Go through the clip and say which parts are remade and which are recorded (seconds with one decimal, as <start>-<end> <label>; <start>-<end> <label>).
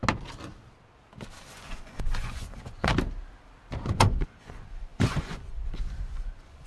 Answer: 0.0-1.5 recorded; 1.5-2.9 remade; 2.9-3.9 recorded; 3.9-6.7 remade